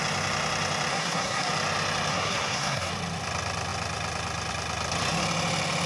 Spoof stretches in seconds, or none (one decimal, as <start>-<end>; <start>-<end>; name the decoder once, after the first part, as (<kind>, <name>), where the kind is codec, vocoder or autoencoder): 0.9-1.5 (codec, SNAC); 2.1-2.9